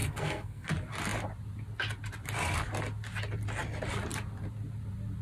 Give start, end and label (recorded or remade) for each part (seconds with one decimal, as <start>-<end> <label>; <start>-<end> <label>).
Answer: 0.0-0.7 remade; 0.7-5.2 recorded